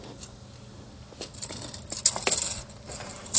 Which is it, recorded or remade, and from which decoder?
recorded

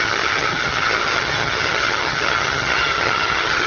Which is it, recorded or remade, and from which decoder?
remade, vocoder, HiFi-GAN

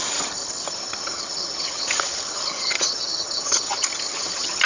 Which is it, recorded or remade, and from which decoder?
remade, vocoder, HiFi-GAN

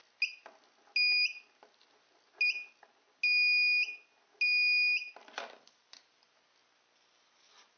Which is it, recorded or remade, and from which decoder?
recorded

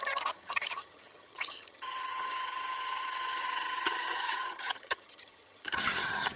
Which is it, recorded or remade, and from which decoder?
remade, vocoder, HiFi-GAN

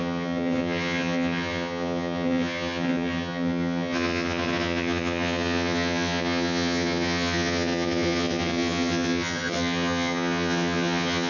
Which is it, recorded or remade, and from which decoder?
remade, vocoder, HiFi-GAN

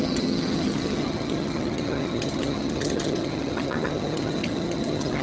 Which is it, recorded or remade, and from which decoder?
remade, vocoder, HiFi-GAN